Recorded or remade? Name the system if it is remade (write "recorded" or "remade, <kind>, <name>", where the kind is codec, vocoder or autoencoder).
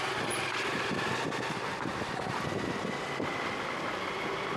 recorded